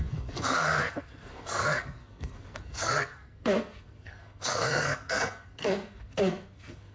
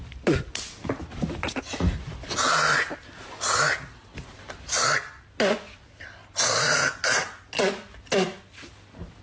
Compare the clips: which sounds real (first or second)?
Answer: second